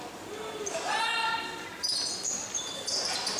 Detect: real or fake fake